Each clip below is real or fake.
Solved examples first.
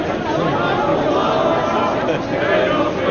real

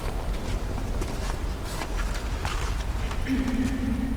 real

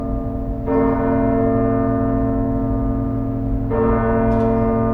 real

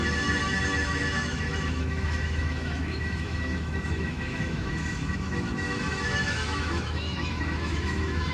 fake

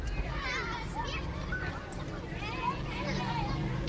real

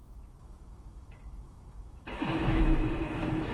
fake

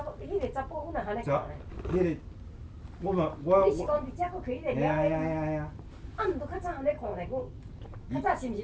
real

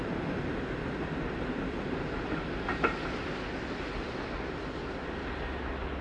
real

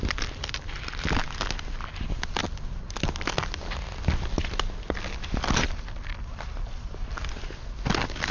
real